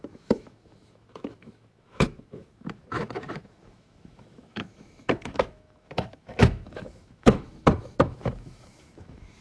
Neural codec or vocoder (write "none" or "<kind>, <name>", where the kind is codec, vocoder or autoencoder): autoencoder, DAC-VAE